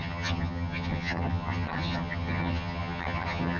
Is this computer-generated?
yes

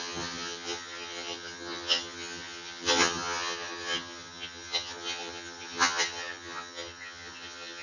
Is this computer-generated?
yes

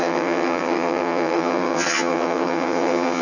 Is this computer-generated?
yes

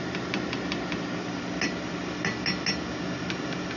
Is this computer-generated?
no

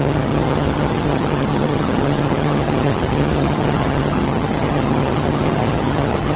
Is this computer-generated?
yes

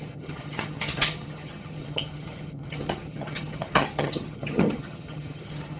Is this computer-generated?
yes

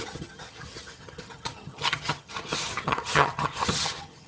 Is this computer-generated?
yes